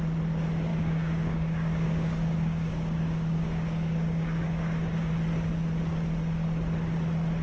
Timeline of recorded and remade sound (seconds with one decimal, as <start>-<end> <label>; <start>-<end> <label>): 0.0-0.7 recorded; 0.7-5.1 remade; 5.1-7.4 recorded